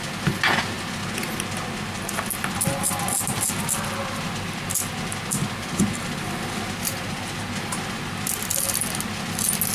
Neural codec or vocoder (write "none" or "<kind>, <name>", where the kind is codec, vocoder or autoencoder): none